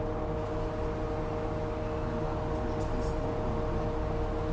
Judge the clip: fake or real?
real